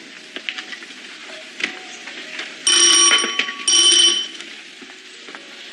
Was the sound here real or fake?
real